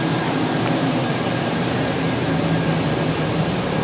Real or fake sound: real